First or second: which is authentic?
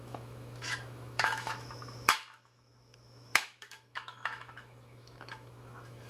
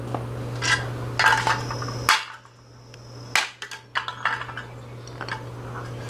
second